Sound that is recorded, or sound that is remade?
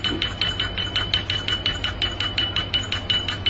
remade